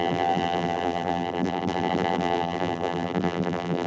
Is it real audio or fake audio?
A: fake